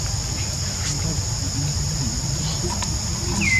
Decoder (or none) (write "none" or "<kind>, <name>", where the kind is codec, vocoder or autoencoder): none